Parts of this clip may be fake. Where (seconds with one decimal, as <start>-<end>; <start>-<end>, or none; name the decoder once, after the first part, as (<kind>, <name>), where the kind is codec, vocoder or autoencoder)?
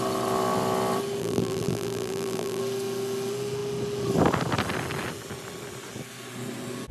1.2-2.6 (vocoder, BigVGAN v2)